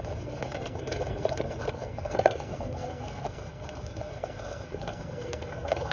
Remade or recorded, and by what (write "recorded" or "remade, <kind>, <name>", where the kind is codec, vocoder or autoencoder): remade, codec, SNAC